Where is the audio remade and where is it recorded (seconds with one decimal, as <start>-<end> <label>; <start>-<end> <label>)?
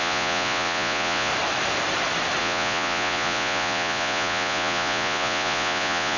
0.0-1.3 remade; 1.3-2.4 recorded; 2.4-6.2 remade